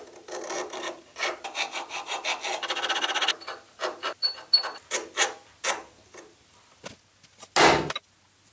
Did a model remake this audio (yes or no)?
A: no